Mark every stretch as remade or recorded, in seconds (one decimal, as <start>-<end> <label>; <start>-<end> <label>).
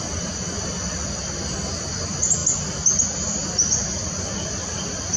0.0-5.2 recorded